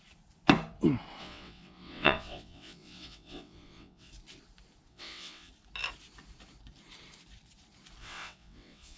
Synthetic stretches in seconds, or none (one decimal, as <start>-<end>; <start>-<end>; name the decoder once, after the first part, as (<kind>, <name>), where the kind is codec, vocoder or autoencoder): 1.2-4.1 (vocoder, WaveNeXt); 4.9-5.5; 8.0-9.0